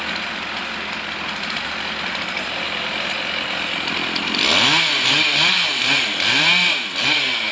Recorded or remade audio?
recorded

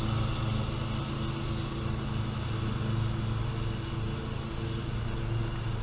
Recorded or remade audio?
recorded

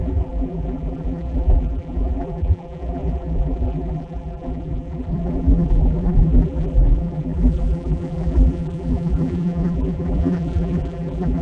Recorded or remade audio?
remade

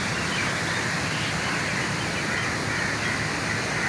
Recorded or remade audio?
recorded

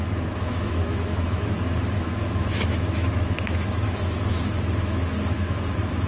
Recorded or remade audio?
remade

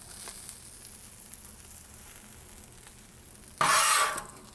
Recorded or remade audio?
recorded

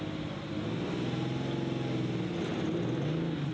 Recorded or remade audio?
recorded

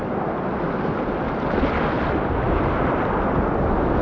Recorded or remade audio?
recorded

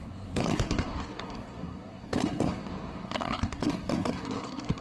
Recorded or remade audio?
remade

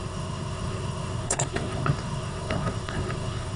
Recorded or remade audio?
remade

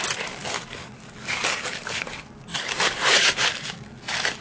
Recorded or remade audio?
remade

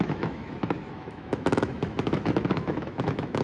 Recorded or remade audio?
remade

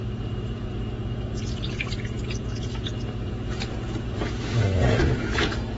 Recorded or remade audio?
remade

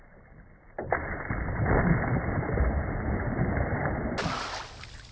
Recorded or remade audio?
recorded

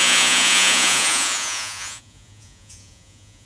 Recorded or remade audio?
remade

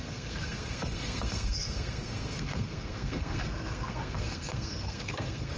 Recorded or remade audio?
remade